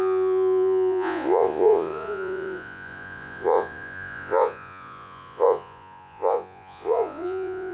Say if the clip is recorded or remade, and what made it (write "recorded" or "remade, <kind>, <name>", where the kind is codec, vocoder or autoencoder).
remade, vocoder, Vocos